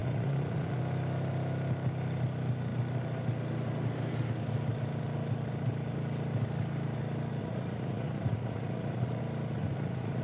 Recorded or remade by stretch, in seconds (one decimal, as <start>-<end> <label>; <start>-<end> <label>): 0.0-0.8 remade; 0.8-7.4 recorded; 7.4-9.2 remade; 9.2-9.6 recorded; 9.6-10.2 remade